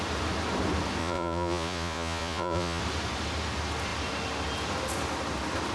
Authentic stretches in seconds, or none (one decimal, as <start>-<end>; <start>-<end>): 0.0-1.0; 2.8-5.7

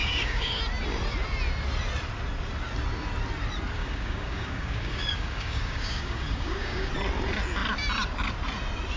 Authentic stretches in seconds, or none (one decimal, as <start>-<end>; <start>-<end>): 0.6-3.8; 6.9-9.0

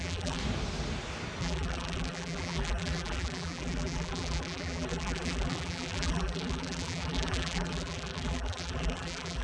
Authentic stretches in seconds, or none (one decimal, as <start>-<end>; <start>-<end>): 0.4-1.4